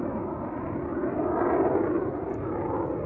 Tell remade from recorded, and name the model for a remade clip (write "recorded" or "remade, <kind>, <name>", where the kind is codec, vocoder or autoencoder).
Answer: recorded